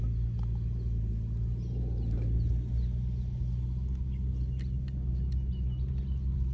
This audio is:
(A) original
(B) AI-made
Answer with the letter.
A